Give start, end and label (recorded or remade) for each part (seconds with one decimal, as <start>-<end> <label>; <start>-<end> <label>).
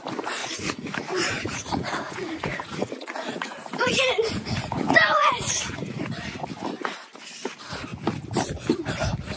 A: 0.0-0.4 recorded; 0.4-1.0 remade; 1.0-1.5 recorded; 1.5-6.0 remade; 6.0-9.4 recorded